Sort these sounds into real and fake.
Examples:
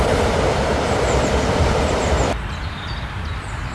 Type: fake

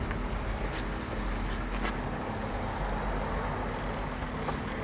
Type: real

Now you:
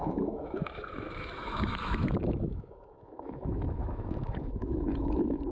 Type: fake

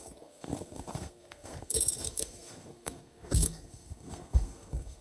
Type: fake